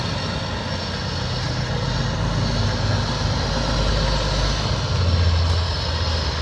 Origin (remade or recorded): recorded